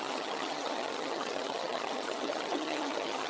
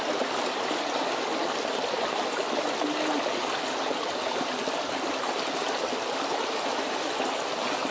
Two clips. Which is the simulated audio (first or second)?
first